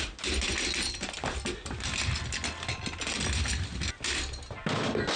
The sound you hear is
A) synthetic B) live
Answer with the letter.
B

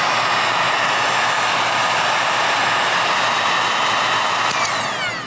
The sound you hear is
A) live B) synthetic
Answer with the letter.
A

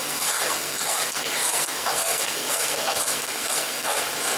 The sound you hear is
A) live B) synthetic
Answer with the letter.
B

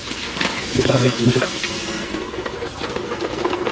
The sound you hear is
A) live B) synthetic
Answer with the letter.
B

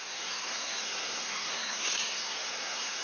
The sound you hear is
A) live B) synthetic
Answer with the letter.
B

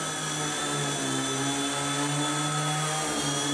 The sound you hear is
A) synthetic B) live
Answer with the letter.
B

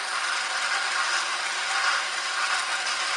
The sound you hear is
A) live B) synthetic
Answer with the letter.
A